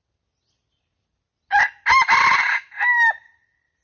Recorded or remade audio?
recorded